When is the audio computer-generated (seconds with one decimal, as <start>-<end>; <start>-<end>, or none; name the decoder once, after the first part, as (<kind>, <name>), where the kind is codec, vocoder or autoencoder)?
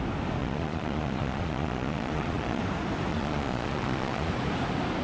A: 0.4-2.6 (vocoder, Vocos); 3.1-4.3